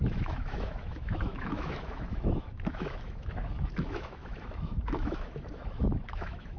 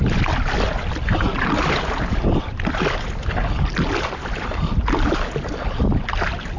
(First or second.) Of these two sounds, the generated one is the first